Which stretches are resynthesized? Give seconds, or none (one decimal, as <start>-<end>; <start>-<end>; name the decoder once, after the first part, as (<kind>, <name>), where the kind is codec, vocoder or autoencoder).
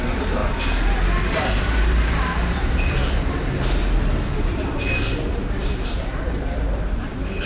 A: 0.0-0.4 (vocoder, BigVGAN v2); 1.2-3.8; 4.4-7.5